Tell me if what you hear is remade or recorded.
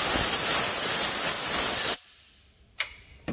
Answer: recorded